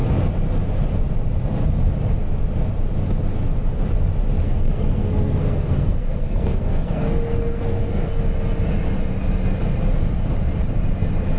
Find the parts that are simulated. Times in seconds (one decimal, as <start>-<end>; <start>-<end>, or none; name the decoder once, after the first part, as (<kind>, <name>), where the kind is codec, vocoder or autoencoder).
4.4-8.1 (codec, SNAC)